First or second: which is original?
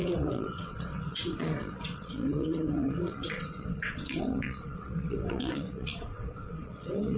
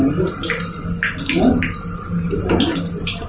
second